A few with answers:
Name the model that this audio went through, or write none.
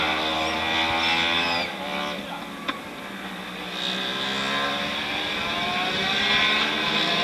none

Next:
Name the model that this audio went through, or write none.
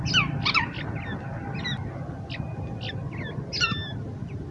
none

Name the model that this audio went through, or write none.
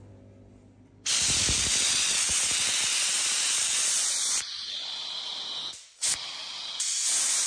none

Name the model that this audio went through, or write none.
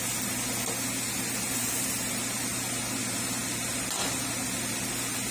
none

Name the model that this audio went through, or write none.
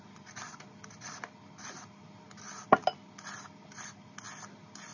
none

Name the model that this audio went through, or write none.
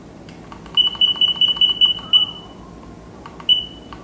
none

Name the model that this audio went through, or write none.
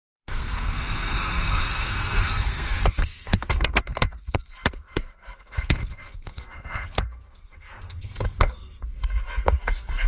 codec, SNAC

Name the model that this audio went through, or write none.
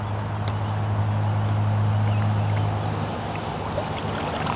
none